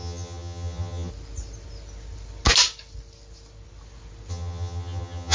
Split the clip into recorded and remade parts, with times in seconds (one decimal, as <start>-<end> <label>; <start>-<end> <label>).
0.0-1.1 remade; 1.1-4.3 recorded; 4.3-5.3 remade